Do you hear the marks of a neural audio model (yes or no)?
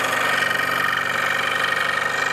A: no